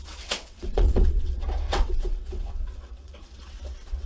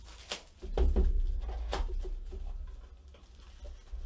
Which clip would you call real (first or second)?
second